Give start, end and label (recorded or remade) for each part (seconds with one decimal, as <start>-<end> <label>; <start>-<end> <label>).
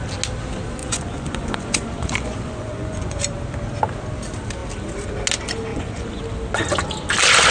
0.0-0.8 recorded; 0.8-3.2 remade; 3.2-5.7 recorded; 5.7-6.2 remade; 6.2-7.5 recorded